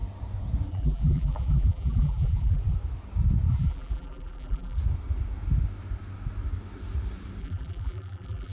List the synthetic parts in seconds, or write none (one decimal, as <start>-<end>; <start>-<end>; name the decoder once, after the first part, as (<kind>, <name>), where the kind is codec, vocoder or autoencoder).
0.7-2.6 (vocoder, BigVGAN v2); 3.5-4.8; 7.4-8.5